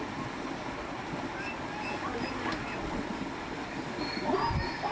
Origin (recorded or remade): recorded